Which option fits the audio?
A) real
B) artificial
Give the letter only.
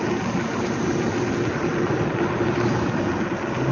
A